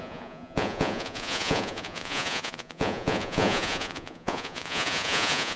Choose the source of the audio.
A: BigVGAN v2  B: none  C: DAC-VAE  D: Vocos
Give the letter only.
D